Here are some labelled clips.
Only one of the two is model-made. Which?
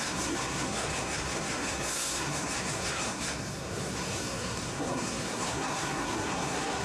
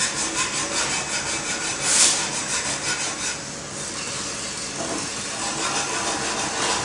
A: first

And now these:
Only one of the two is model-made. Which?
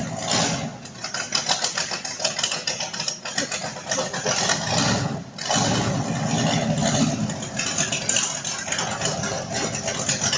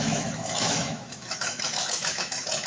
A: second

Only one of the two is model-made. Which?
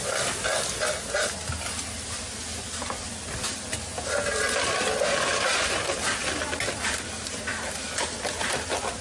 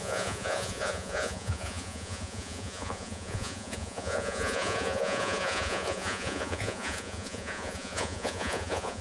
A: second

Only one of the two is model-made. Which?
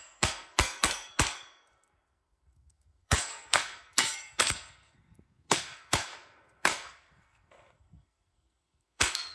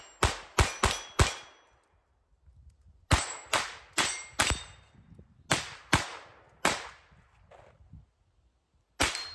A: first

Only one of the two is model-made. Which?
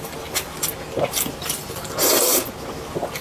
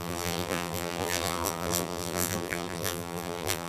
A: second